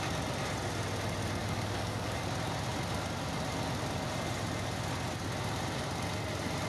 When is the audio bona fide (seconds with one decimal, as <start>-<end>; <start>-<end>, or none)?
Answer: 0.0-1.4; 2.2-6.7